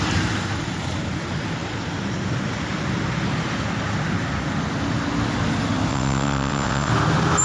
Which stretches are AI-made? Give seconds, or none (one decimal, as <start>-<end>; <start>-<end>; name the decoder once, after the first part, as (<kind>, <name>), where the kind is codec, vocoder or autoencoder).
5.9-6.9 (vocoder, WaveNeXt)